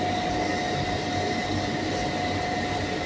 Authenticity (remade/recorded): recorded